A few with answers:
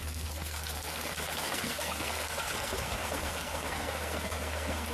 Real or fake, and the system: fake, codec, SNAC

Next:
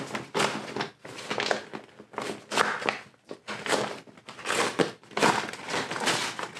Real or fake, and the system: real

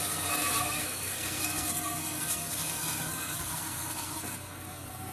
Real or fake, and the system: fake, codec, SNAC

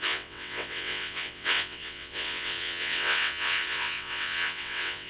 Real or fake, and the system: fake, vocoder, WaveNeXt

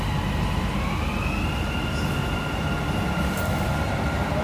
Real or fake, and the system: real